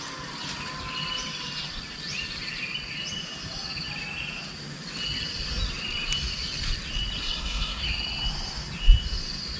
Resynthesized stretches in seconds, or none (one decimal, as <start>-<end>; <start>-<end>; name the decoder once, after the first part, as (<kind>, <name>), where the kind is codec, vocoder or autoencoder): 7.2-7.8 (codec, SNAC)